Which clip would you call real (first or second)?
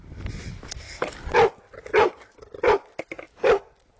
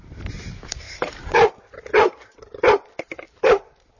first